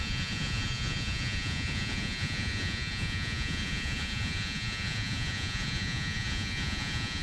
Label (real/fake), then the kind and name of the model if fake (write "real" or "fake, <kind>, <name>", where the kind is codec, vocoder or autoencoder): fake, vocoder, Vocos